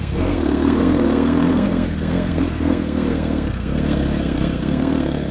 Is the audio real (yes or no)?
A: no